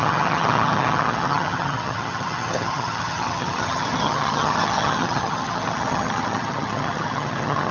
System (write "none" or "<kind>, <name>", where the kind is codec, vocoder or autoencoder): vocoder, HiFi-GAN